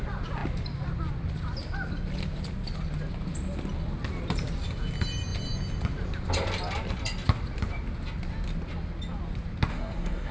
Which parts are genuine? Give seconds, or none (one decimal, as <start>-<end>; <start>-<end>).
0.0-9.7